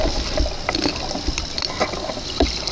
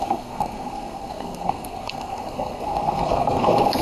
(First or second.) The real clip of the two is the first